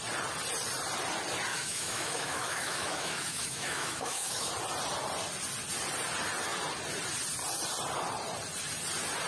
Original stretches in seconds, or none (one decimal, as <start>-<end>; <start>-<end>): 0.0-1.5; 4.5-9.3